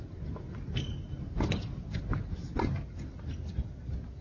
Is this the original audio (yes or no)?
yes